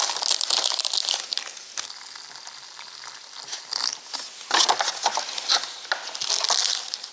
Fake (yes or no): no